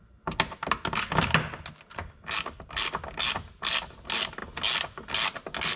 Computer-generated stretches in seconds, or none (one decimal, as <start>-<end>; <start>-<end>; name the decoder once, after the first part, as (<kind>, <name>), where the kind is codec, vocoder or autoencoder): none